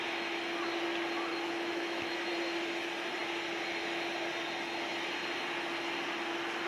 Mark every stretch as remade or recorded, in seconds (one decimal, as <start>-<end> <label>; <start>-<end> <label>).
0.0-1.3 recorded; 1.3-2.3 remade; 2.3-6.7 recorded